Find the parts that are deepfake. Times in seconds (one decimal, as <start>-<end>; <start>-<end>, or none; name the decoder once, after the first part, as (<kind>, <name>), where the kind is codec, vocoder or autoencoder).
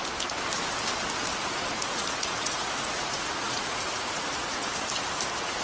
1.3-4.7 (vocoder, Vocos)